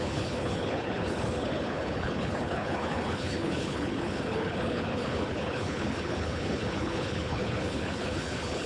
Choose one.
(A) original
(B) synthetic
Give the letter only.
B